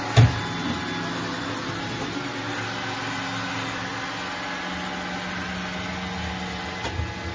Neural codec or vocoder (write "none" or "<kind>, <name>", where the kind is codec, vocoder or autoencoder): none